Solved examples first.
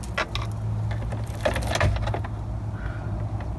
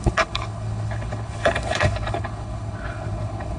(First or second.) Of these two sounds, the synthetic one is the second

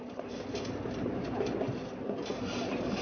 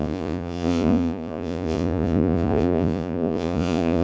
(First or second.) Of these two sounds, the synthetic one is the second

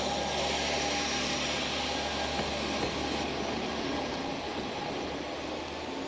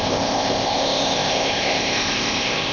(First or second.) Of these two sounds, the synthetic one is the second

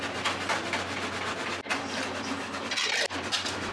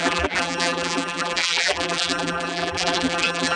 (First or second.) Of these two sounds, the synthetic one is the second